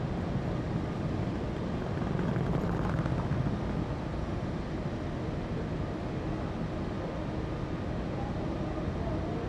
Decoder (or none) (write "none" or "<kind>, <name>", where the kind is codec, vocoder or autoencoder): none